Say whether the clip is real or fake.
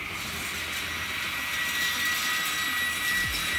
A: real